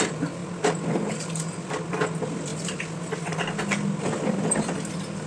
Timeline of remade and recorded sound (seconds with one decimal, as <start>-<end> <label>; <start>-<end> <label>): 0.0-5.3 recorded

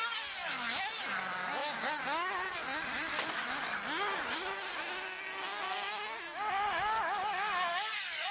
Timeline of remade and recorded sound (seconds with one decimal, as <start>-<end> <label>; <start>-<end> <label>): 0.0-8.3 recorded

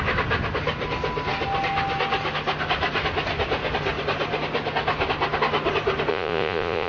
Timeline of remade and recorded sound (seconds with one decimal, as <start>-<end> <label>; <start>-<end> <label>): 0.0-6.1 recorded; 6.1-6.9 remade

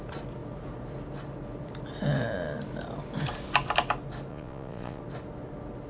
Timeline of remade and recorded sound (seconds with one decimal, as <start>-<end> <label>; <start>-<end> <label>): 0.0-4.3 recorded; 4.3-5.0 remade; 5.0-5.9 recorded